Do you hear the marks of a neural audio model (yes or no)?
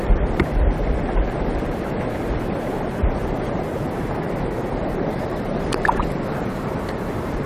yes